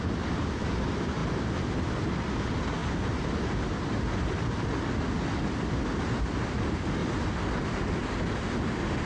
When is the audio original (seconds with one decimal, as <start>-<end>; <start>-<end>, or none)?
0.0-9.1